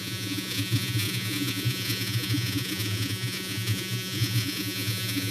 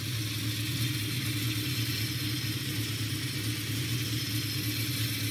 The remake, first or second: first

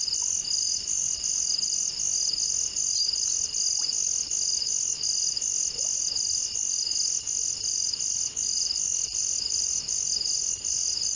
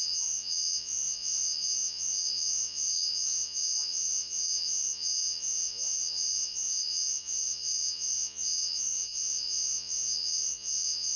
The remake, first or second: second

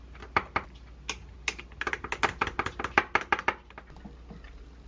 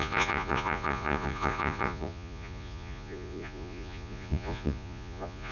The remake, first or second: second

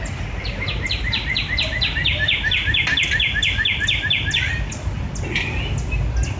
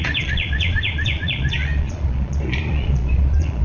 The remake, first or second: second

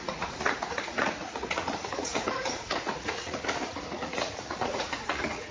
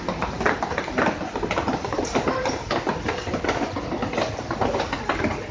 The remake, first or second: first